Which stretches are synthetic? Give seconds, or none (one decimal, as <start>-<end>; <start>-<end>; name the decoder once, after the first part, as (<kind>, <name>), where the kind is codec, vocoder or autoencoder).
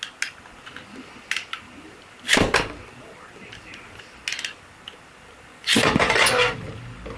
5.5-6.3 (vocoder, Vocos)